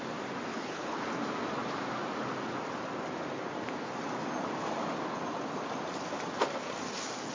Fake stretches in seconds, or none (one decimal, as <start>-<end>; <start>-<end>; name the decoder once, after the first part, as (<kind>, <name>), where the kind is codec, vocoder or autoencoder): 0.5-1.1 (codec, HILCodec)